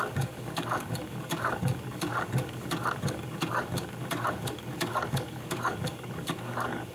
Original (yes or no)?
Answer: no